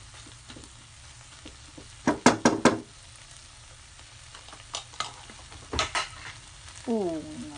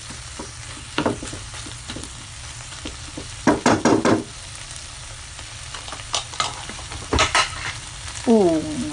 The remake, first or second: second